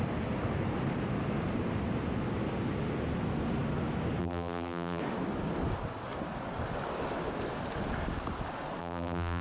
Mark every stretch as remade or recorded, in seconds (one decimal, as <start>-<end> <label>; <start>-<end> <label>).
0.0-4.2 recorded; 4.2-5.0 remade; 5.0-8.8 recorded; 8.8-9.4 remade